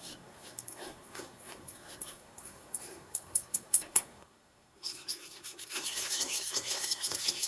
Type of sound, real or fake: fake